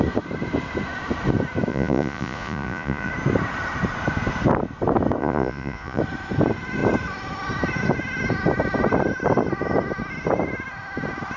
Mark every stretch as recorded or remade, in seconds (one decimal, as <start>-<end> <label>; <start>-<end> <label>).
0.0-1.7 recorded; 1.7-3.1 remade; 3.1-5.2 recorded; 5.2-6.0 remade; 6.0-11.4 recorded